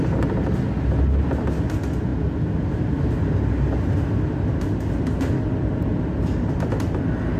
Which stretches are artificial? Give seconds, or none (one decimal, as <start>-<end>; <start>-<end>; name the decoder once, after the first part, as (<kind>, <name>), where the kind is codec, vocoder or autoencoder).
none